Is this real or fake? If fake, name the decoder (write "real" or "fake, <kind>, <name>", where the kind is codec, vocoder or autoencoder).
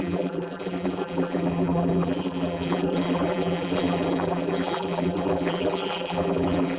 fake, vocoder, BigVGAN v2